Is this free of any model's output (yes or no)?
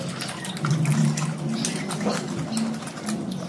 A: yes